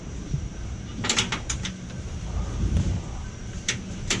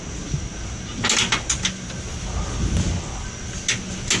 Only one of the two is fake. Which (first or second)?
first